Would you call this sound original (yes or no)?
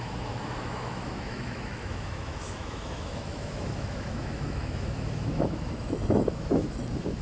no